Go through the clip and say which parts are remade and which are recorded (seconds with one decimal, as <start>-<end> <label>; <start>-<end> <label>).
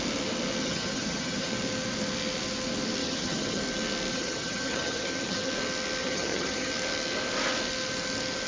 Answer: 0.0-0.6 recorded; 0.6-1.5 remade; 1.5-3.0 recorded; 3.0-3.6 remade; 3.6-4.1 recorded; 4.1-5.5 remade; 5.5-6.0 recorded; 6.0-6.7 remade; 6.7-8.5 recorded